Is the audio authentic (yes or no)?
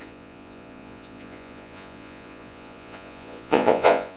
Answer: no